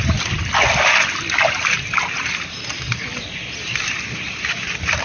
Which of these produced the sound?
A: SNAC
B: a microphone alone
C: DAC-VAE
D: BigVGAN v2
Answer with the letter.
B